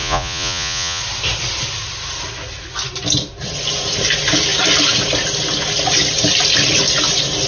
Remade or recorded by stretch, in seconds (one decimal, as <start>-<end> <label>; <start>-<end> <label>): 0.0-1.0 remade; 1.0-7.5 recorded

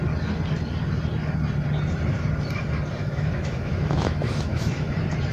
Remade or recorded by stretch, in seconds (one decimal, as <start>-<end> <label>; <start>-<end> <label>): 0.0-3.0 recorded; 3.0-4.7 remade; 4.7-5.3 recorded

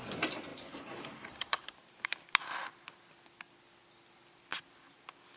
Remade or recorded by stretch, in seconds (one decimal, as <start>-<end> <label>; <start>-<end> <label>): 0.0-0.5 recorded; 0.5-2.1 remade; 2.1-4.5 recorded; 4.5-5.0 remade; 5.0-5.4 recorded

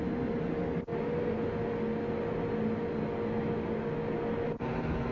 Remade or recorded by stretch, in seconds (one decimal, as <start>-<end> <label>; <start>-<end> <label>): 0.0-5.1 recorded

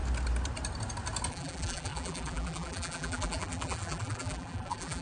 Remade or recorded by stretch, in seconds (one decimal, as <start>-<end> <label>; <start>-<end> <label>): 0.0-1.3 recorded; 1.3-5.0 remade

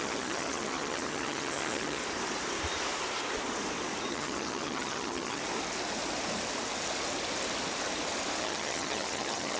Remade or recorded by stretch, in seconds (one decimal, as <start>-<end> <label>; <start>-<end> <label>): 0.0-2.0 remade; 2.0-4.1 recorded; 4.1-5.4 remade; 5.4-8.4 recorded; 8.4-9.6 remade